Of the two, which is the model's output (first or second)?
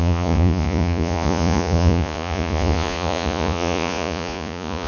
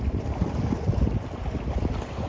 first